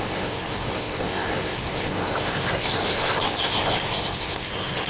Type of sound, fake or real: fake